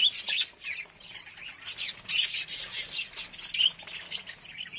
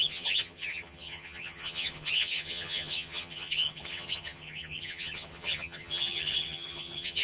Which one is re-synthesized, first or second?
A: second